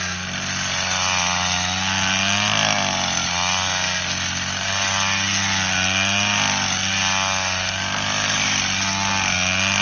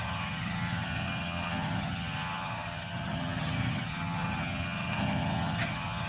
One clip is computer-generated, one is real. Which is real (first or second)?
first